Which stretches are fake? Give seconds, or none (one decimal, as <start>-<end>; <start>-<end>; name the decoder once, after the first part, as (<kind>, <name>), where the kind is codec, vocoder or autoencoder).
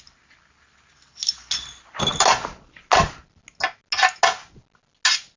none